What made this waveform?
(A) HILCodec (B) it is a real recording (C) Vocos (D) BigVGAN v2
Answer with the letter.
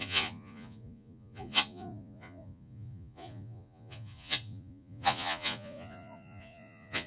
C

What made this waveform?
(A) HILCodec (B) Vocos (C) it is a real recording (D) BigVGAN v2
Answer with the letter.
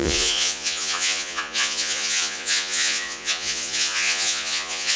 B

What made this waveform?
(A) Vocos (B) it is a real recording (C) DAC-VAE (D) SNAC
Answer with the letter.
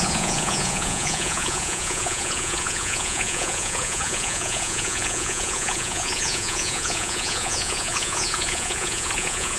A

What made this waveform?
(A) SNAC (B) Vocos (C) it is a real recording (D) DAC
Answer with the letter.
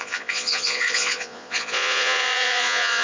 B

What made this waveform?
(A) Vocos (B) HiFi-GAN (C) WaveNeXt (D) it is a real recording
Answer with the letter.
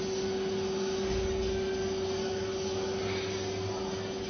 D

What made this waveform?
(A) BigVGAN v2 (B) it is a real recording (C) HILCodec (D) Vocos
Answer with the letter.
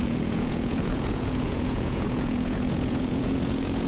D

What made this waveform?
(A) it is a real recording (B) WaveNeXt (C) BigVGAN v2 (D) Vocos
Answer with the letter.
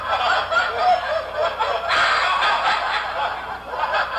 A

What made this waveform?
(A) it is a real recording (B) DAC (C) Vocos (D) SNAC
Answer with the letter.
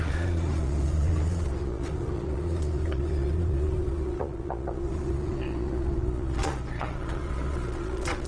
C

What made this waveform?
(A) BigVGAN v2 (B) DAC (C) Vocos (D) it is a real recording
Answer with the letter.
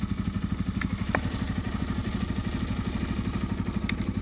D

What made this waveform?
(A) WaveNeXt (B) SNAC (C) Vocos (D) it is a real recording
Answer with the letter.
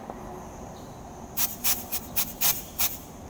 D